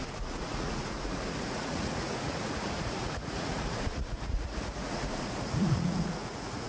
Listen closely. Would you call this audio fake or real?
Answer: fake